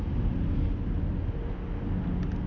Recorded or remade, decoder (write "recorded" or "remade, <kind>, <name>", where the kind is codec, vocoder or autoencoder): recorded